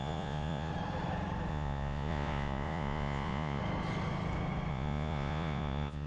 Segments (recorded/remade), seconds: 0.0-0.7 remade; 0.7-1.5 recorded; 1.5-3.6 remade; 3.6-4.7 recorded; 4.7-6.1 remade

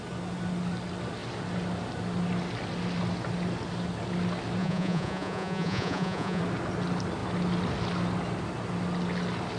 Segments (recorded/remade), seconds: 0.0-4.6 recorded; 4.6-6.4 remade; 6.4-9.6 recorded

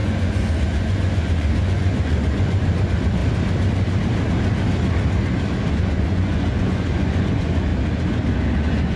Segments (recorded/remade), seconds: 0.0-3.2 remade; 3.2-5.7 recorded; 5.7-7.7 remade; 7.7-8.6 recorded; 8.6-9.0 remade

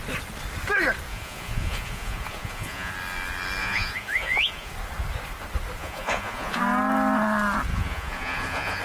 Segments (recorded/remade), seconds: 0.0-1.1 recorded; 1.1-2.9 remade; 2.9-3.6 recorded; 3.6-4.7 remade; 4.7-5.8 recorded; 5.8-6.6 remade; 6.6-7.7 recorded; 7.7-8.8 remade

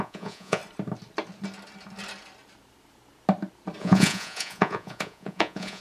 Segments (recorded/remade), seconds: 0.0-0.6 remade; 0.6-3.8 recorded; 3.8-5.8 remade

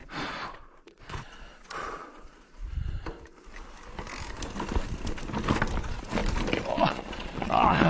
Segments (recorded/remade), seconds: 0.0-2.6 remade; 2.6-5.8 recorded; 5.8-6.2 remade; 6.2-6.7 recorded; 6.7-7.9 remade

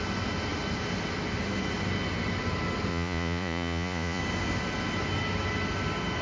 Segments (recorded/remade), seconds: 0.0-2.9 recorded; 2.9-4.2 remade; 4.2-6.2 recorded